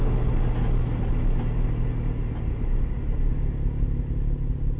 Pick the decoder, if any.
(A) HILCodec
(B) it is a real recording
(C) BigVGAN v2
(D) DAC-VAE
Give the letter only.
B